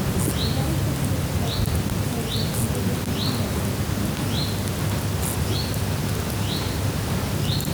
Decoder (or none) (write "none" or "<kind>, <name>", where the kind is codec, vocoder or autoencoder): none